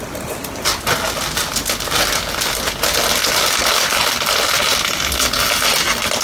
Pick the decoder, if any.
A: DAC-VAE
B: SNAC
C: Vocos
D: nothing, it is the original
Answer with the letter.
D